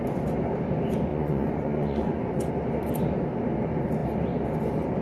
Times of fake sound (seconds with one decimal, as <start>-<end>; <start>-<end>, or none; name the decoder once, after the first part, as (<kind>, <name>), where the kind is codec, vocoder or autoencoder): 1.1-2.5 (vocoder, Vocos)